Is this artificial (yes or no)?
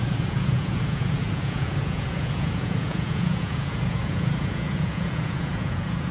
yes